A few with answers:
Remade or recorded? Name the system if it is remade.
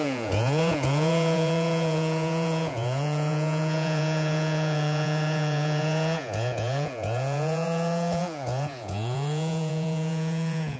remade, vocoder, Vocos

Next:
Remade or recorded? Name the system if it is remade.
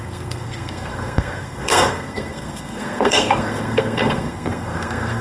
remade, codec, SNAC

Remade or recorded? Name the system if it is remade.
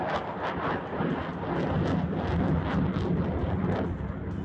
recorded